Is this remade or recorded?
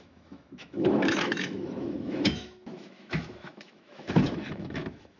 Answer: remade